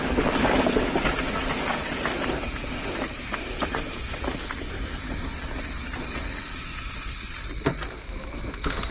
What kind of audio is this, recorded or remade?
recorded